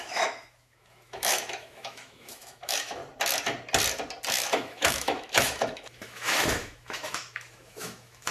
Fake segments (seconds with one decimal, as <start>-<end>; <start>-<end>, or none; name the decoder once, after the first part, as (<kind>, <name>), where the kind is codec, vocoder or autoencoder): 0.0-3.0 (autoencoder, DAC-VAE); 4.3-8.3